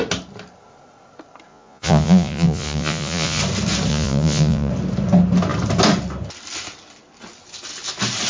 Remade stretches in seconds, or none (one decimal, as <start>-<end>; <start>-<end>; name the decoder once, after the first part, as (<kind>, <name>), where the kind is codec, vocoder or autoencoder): 1.5-3.4 (vocoder, Vocos); 3.9-4.7